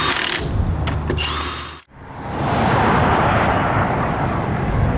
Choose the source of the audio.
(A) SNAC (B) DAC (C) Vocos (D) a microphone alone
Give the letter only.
D